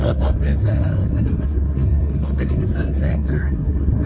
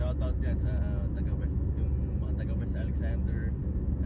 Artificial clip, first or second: first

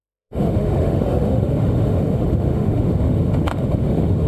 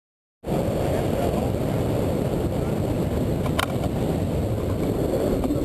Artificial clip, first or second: first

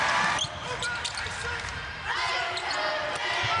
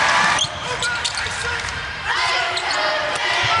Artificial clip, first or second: second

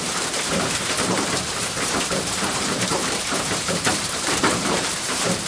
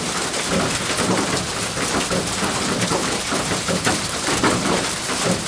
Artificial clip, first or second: first